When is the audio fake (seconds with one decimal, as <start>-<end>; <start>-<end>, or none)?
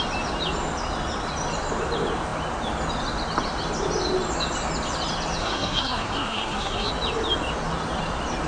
5.4-6.9